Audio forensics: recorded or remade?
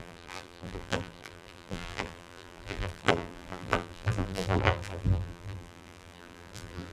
remade